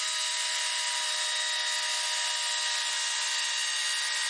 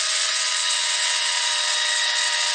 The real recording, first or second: first